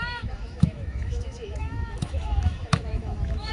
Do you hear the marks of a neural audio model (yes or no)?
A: yes